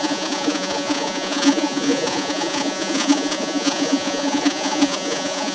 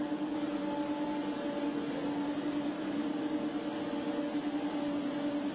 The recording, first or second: second